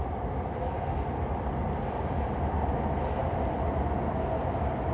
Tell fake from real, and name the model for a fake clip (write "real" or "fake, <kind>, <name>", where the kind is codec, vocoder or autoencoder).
real